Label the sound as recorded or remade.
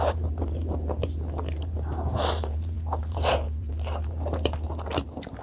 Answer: remade